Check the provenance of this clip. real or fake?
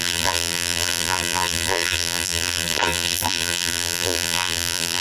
fake